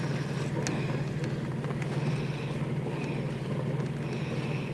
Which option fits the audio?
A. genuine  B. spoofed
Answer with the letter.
A